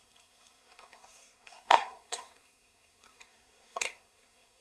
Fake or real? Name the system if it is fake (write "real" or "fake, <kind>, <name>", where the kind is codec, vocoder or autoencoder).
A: fake, codec, SNAC